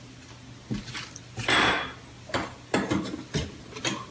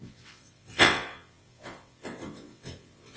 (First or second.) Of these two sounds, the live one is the first